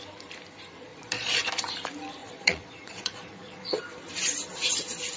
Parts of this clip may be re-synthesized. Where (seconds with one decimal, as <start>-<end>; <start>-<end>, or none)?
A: 0.9-1.5; 2.2-3.8